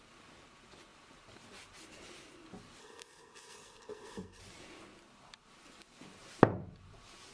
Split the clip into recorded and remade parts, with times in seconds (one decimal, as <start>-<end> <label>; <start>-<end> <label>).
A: 0.0-2.8 recorded; 2.8-4.4 remade; 4.4-7.3 recorded

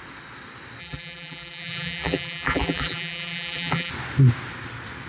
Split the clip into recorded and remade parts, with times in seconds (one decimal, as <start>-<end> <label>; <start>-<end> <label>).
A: 0.0-0.8 recorded; 0.8-3.9 remade; 3.9-5.1 recorded

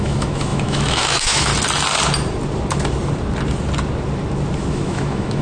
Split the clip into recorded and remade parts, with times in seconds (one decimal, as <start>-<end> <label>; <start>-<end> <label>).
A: 0.0-1.5 remade; 1.5-4.7 recorded; 4.7-5.4 remade

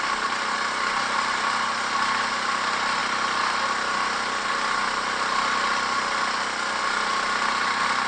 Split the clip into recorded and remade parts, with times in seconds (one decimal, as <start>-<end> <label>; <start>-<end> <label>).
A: 0.0-8.1 recorded